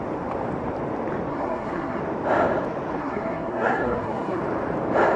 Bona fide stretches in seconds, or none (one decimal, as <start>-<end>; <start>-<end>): 0.0-1.3; 2.0-3.0; 4.4-5.2